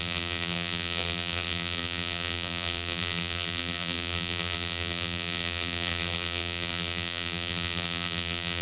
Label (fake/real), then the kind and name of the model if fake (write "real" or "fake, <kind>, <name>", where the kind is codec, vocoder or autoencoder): fake, vocoder, BigVGAN v2